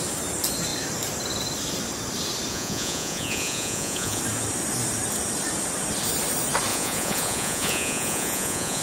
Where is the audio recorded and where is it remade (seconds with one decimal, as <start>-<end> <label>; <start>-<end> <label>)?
0.0-2.5 recorded; 2.5-4.2 remade; 4.2-6.7 recorded; 6.7-8.8 remade

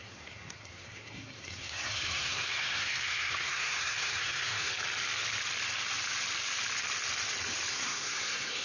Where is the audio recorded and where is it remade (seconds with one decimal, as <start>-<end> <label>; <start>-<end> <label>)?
0.0-4.7 remade; 4.7-7.7 recorded; 7.7-8.6 remade